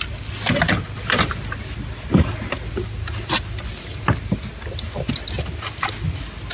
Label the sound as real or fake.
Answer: real